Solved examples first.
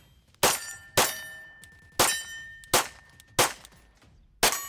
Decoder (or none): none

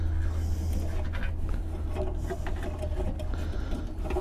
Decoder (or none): none